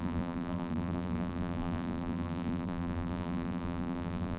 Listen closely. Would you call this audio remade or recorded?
remade